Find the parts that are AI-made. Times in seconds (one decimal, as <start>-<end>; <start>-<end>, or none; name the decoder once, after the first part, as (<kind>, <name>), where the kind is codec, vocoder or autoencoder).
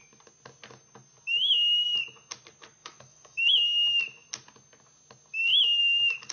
2.8-3.5 (autoencoder, DAC-VAE)